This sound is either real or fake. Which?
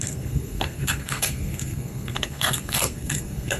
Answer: fake